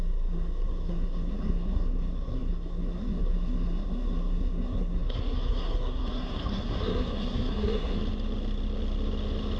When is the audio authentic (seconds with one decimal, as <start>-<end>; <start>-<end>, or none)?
8.0-9.6